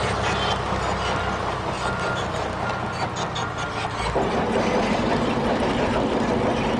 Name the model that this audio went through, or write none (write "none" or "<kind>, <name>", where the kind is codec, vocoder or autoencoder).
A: none